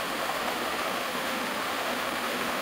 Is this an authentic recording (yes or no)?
no